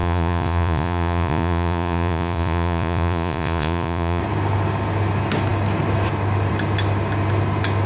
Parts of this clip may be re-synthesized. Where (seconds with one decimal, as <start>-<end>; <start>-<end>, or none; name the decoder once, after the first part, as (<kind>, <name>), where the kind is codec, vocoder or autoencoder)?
0.0-4.2 (vocoder, Vocos)